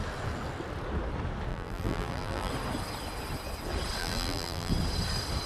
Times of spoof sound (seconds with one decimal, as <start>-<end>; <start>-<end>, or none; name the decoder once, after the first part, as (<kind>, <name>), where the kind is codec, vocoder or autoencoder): 1.5-2.5 (vocoder, BigVGAN v2); 4.0-4.7